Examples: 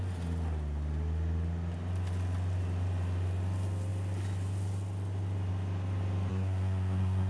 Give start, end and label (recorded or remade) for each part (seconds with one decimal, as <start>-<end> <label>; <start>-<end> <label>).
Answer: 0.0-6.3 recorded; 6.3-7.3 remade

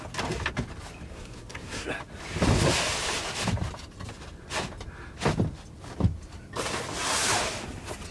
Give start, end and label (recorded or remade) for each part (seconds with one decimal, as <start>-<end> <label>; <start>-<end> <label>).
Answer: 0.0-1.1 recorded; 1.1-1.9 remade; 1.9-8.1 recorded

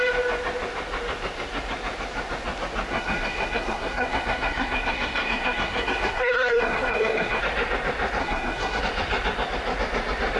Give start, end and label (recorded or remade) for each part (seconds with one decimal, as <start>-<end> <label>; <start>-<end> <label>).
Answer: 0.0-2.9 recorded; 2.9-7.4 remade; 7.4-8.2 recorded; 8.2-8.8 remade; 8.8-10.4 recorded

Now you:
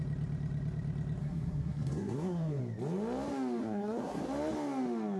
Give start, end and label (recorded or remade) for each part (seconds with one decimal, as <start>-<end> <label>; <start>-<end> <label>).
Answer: 0.0-1.2 recorded; 1.2-2.6 remade; 2.6-3.6 recorded; 3.6-4.2 remade; 4.2-5.2 recorded

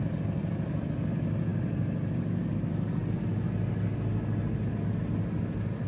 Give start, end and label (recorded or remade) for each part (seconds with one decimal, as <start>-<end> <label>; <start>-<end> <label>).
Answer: 0.0-5.9 recorded

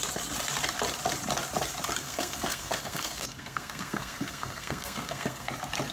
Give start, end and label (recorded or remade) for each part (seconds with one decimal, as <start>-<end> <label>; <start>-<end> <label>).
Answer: 0.0-2.0 recorded; 2.0-5.5 remade; 5.5-5.9 recorded

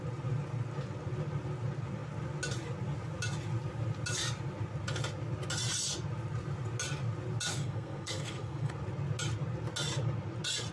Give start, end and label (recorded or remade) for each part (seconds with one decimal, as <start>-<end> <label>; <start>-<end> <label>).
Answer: 0.0-7.5 recorded; 7.5-8.7 remade; 8.7-10.7 recorded